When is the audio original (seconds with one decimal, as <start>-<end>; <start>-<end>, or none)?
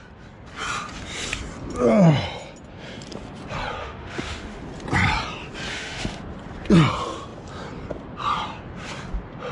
0.0-3.8; 4.6-5.7; 6.2-9.5